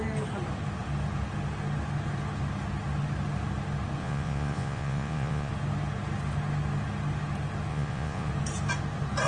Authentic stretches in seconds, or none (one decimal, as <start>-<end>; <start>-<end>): 0.0-4.0; 5.5-7.7; 8.3-9.3